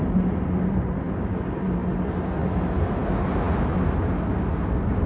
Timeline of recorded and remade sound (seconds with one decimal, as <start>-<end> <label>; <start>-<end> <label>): 0.0-5.1 recorded